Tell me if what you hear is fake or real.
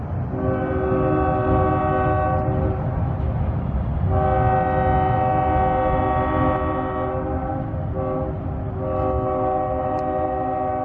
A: real